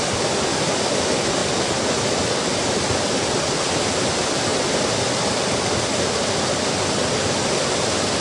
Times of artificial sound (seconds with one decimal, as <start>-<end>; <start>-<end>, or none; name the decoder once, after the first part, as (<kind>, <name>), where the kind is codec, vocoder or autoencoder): 0.0-1.4 (vocoder, BigVGAN v2); 4.0-4.5; 5.4-8.2